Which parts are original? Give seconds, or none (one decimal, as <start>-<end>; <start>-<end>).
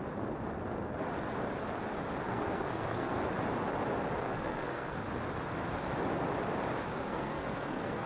0.0-2.3; 3.2-4.2; 5.0-7.0